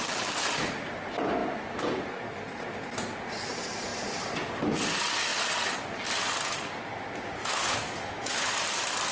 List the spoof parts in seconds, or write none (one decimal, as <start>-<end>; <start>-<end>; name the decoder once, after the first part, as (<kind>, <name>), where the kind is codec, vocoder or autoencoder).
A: 7.4-8.5 (autoencoder, DAC-VAE)